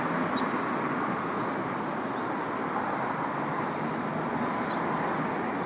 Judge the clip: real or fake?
real